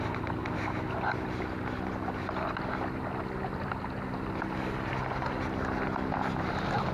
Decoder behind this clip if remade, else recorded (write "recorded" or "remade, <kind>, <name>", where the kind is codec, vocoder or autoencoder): recorded